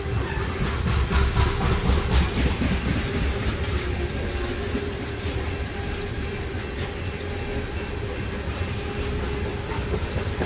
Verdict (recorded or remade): recorded